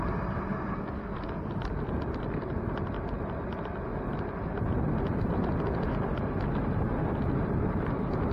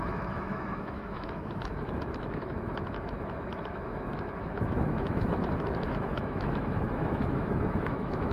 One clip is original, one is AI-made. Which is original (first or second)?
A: first